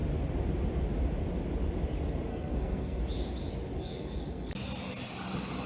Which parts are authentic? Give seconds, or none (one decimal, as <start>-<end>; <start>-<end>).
0.0-2.3; 3.0-3.8; 4.5-5.7